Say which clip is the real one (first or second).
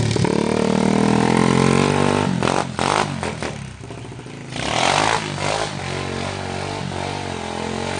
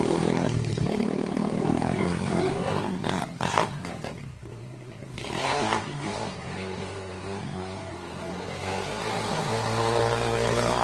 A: first